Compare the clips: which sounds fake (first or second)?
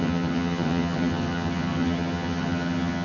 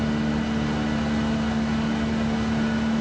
first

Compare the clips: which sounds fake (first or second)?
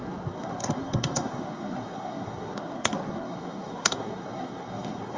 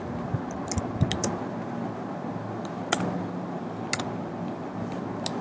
first